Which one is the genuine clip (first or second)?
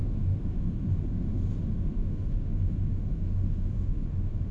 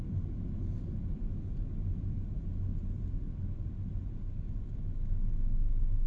second